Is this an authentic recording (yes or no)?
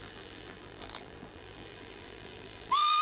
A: no